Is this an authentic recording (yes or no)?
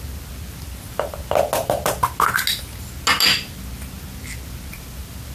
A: yes